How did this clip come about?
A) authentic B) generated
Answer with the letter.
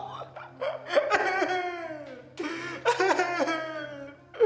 A